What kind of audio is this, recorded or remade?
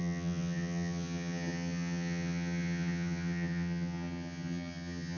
remade